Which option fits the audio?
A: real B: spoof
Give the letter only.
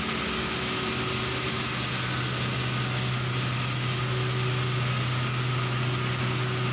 A